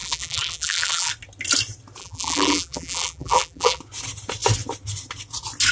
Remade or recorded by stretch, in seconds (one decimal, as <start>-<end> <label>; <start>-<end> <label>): 0.0-1.1 remade; 1.1-2.0 recorded; 2.0-3.8 remade; 3.8-5.7 recorded